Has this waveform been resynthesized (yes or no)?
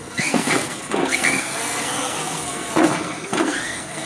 yes